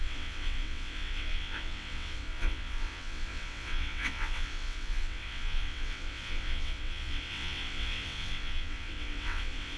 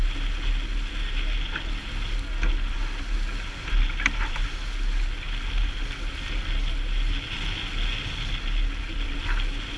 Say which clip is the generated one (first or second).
first